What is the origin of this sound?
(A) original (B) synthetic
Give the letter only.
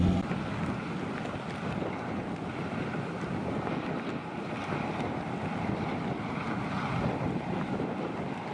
A